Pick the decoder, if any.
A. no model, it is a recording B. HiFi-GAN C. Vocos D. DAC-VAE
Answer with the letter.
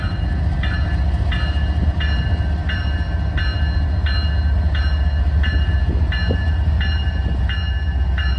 A